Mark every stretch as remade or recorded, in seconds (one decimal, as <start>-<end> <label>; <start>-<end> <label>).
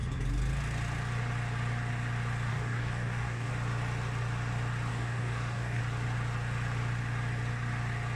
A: 0.0-2.5 recorded; 2.5-3.5 remade; 3.5-4.9 recorded; 4.9-5.8 remade; 5.8-8.2 recorded